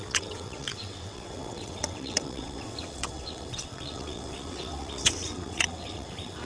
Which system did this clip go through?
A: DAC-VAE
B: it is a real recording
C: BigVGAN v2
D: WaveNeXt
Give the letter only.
D